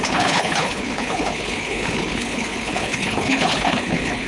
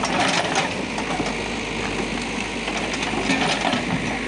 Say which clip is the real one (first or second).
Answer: second